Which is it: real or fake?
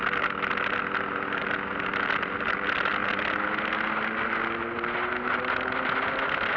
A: real